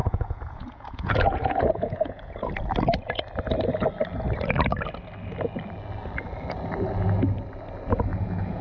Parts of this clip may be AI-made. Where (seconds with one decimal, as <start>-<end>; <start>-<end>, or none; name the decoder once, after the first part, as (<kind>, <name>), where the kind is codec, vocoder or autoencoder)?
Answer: 0.0-2.5 (vocoder, Vocos); 8.1-8.6